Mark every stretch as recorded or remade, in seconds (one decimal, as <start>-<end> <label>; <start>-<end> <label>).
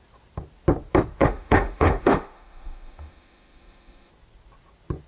0.0-1.2 recorded; 1.2-4.1 remade; 4.1-5.1 recorded